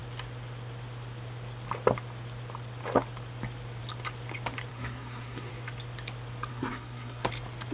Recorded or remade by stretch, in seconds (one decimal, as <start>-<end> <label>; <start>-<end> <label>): 0.0-4.7 recorded; 4.7-5.5 remade; 5.5-6.5 recorded; 6.5-7.3 remade; 7.3-7.7 recorded